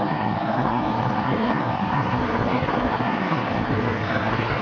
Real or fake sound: fake